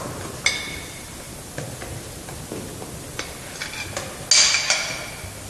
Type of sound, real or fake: real